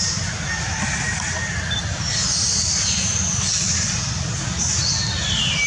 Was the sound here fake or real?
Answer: real